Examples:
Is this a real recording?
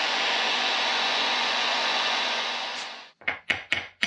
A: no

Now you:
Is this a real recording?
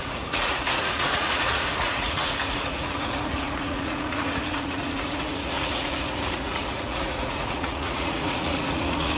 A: no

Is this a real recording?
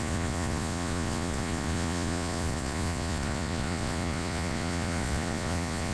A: no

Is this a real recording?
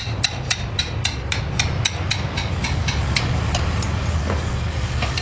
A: yes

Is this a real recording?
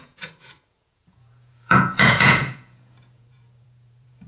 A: no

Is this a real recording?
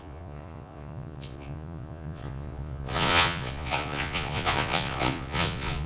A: no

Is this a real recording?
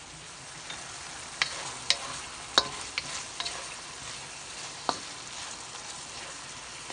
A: yes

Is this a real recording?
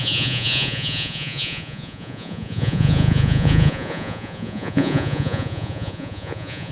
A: no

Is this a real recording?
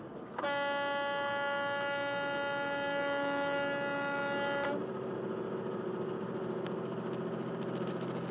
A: yes